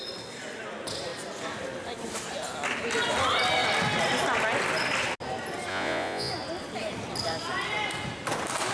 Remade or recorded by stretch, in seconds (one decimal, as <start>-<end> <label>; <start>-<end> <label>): 0.0-5.7 recorded; 5.7-6.3 remade; 6.3-8.7 recorded